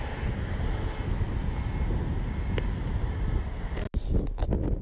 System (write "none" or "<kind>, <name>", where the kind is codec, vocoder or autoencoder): none